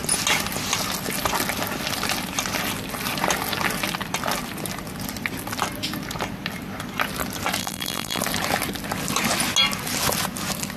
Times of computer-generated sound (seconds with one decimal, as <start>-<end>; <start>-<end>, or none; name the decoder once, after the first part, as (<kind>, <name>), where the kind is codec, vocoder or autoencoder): 7.6-8.2 (vocoder, BigVGAN v2)